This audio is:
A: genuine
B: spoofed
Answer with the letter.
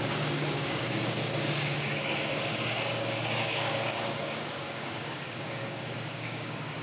B